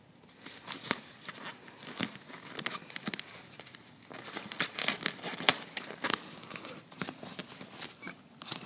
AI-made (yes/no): no